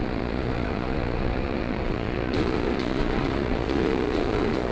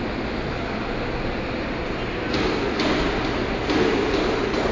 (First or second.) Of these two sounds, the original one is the second